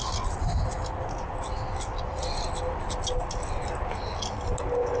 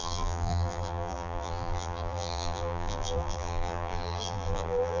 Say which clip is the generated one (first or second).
second